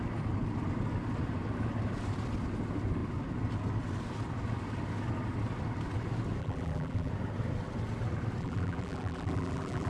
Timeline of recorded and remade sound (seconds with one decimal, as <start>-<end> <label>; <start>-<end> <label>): 0.0-6.4 recorded; 6.4-7.1 remade; 7.1-8.4 recorded; 8.4-9.9 remade